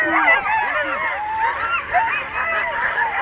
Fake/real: real